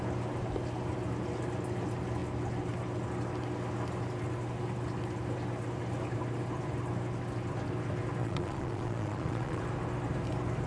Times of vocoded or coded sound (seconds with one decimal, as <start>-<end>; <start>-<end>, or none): 8.2-9.6